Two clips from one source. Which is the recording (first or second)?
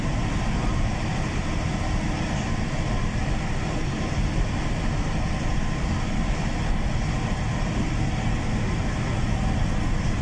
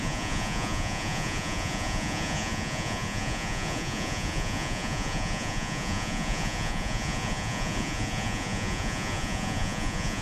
first